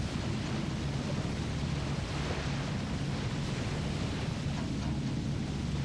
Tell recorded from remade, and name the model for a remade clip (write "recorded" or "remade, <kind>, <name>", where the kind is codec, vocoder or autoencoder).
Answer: recorded